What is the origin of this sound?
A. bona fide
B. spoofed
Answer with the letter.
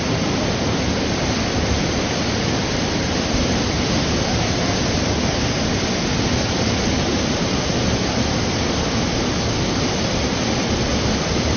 A